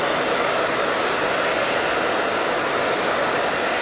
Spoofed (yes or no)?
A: no